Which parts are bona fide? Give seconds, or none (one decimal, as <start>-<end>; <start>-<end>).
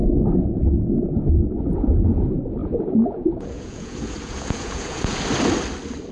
0.0-2.6; 5.2-6.1